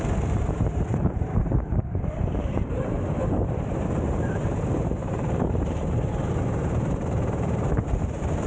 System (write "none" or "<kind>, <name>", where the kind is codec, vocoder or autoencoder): vocoder, BigVGAN v2